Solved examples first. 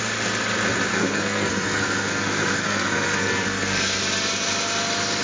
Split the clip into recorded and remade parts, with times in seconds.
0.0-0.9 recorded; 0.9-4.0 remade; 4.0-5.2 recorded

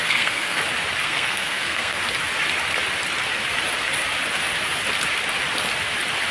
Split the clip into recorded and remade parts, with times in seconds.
0.0-0.6 remade; 0.6-1.0 recorded; 1.0-2.0 remade; 2.0-6.3 recorded

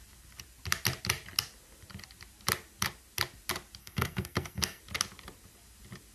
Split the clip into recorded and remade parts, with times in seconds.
0.0-3.8 recorded; 3.8-4.8 remade; 4.8-6.1 recorded

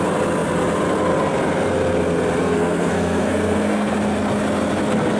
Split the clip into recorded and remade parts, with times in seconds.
0.0-2.4 recorded; 2.4-3.9 remade; 3.9-5.2 recorded

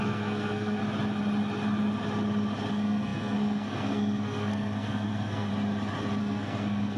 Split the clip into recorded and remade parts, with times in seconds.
0.0-0.8 remade; 0.8-2.7 recorded; 2.7-5.5 remade; 5.5-6.2 recorded; 6.2-7.0 remade